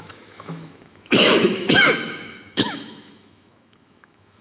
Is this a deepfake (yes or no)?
yes